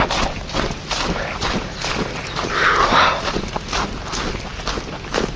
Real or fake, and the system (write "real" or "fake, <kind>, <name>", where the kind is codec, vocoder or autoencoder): real